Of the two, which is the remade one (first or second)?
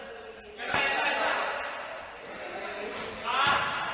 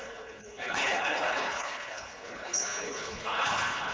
second